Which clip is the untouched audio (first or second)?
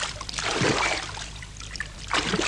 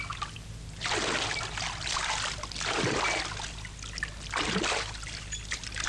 second